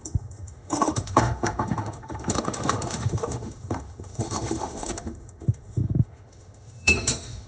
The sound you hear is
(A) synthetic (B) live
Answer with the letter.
A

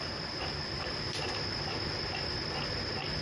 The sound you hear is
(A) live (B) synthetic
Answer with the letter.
A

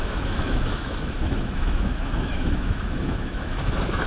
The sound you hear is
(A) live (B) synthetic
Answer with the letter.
B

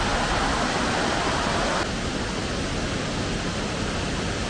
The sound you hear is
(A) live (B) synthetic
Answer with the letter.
A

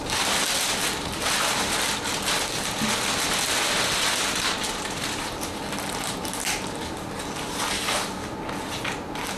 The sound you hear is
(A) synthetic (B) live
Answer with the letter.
B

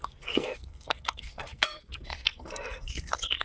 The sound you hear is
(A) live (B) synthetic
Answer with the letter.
B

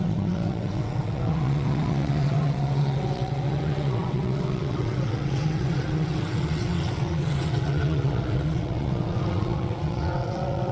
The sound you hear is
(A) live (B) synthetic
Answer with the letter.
B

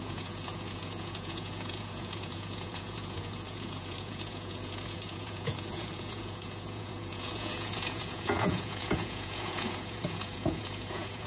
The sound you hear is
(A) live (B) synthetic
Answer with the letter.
B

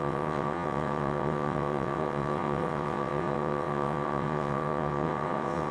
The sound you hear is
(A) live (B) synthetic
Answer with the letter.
B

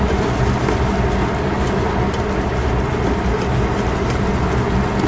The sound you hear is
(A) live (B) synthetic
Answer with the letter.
A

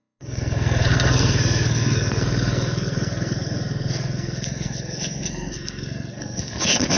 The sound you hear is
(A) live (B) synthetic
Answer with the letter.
B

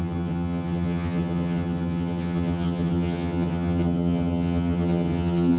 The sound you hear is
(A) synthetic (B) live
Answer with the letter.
A